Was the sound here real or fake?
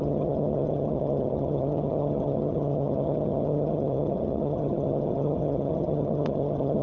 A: fake